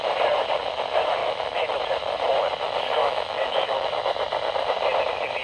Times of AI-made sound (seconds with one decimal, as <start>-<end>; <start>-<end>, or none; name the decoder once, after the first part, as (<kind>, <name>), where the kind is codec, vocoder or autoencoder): 1.2-1.8 (autoencoder, DAC-VAE); 3.0-3.9